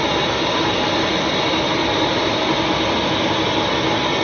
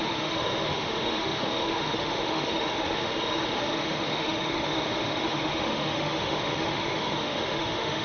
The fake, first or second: second